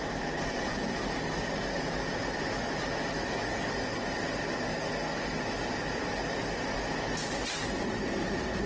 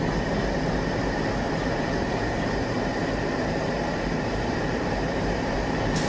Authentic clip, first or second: first